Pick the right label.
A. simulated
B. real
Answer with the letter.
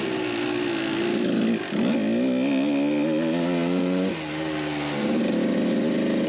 B